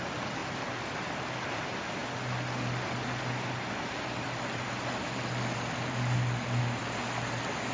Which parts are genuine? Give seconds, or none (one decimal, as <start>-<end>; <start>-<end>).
0.0-7.7